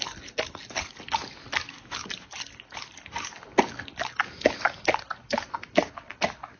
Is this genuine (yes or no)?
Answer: yes